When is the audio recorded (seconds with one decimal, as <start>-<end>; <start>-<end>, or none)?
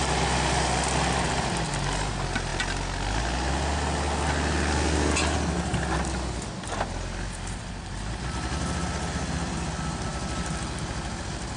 0.0-11.6